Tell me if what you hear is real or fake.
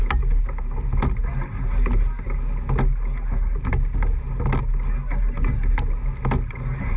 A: real